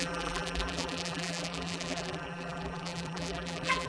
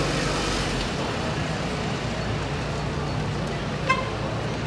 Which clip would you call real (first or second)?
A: second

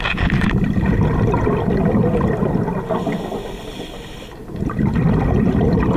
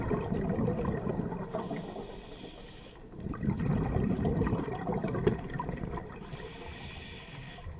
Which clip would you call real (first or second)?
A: first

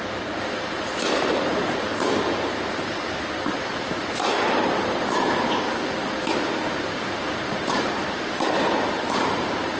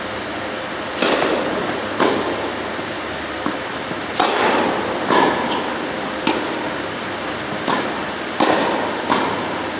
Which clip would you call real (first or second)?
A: second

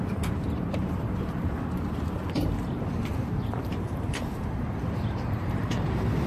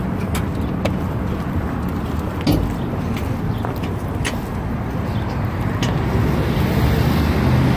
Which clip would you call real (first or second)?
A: second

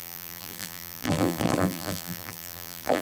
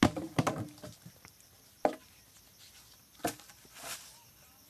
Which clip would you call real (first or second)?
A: second